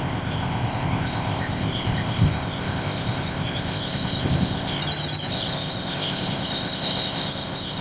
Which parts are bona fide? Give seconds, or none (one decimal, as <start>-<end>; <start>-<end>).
4.8-5.3